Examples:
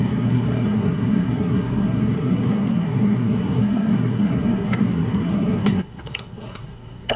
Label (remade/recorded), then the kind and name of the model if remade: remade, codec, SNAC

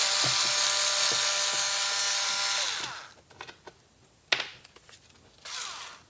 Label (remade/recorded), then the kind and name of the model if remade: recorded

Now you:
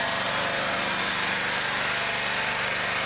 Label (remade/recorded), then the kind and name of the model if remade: recorded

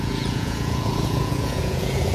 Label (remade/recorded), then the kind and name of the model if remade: remade, vocoder, Vocos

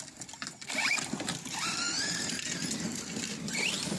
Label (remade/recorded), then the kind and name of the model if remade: recorded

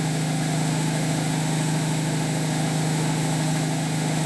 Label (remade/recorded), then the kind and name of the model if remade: remade, autoencoder, DAC-VAE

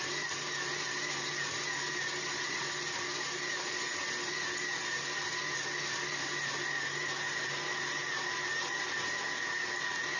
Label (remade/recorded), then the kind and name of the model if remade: recorded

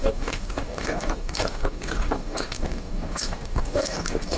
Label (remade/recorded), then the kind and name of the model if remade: remade, codec, DAC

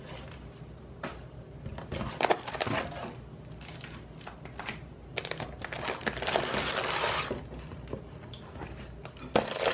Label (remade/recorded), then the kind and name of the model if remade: recorded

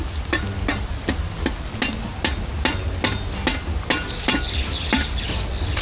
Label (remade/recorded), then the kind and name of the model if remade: recorded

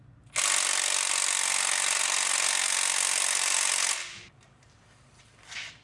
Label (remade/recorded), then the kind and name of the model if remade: recorded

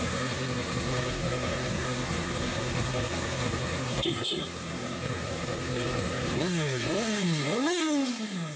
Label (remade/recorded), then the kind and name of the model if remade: remade, codec, SNAC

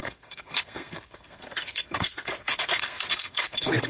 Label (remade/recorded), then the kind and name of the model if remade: remade, codec, SNAC